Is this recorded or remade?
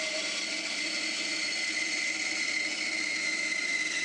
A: recorded